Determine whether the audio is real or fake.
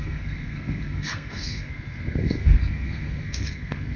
fake